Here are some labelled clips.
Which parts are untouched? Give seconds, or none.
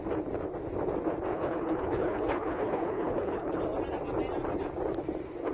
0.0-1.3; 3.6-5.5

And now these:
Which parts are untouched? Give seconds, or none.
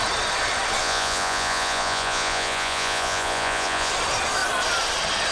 0.0-0.8; 3.9-5.3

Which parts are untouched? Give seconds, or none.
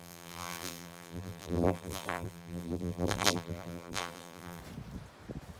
4.6-5.6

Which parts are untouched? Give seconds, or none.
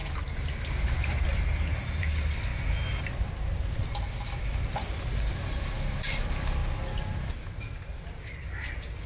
0.0-2.0; 2.5-5.3; 6.6-7.6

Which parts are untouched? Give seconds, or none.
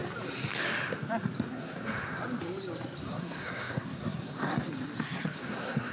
0.0-1.5; 2.2-3.0; 4.5-5.0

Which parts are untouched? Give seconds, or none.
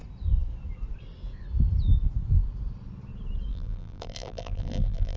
0.0-3.5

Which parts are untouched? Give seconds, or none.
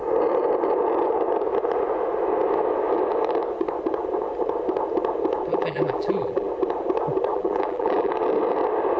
0.0-5.5; 6.5-7.3; 8.1-9.0